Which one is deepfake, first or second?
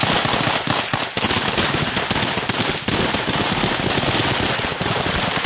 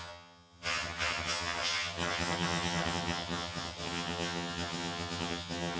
second